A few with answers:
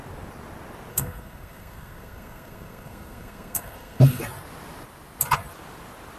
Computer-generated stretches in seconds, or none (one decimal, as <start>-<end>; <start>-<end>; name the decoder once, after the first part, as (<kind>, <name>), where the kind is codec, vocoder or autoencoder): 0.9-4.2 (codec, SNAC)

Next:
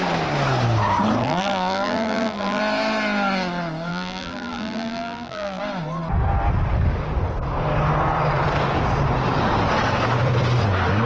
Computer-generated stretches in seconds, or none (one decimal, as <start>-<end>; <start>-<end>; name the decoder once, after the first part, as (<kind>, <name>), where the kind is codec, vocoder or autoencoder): 1.2-2.6 (vocoder, BigVGAN v2); 3.9-5.6

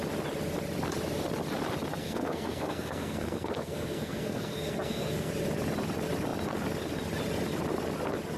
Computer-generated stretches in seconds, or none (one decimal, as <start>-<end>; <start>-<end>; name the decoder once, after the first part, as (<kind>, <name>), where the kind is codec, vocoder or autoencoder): 2.0-5.3 (codec, SNAC)